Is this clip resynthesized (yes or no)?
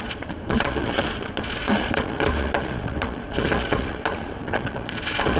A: yes